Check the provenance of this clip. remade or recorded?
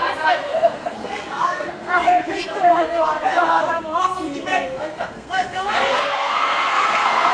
remade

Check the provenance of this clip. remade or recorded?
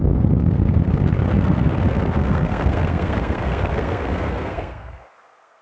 remade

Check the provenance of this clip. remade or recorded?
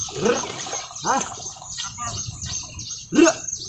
recorded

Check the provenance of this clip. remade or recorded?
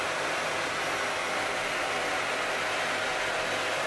recorded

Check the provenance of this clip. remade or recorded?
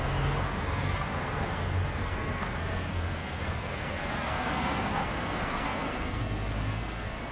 remade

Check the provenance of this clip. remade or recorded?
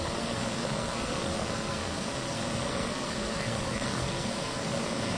remade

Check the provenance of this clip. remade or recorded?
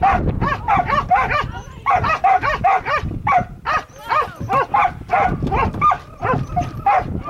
recorded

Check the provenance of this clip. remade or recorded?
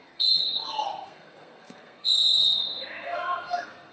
remade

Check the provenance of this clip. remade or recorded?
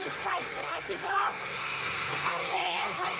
remade